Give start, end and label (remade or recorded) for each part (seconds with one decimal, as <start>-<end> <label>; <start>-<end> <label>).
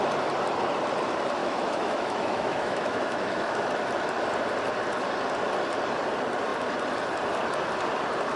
0.0-1.4 recorded; 1.4-3.7 remade; 3.7-8.4 recorded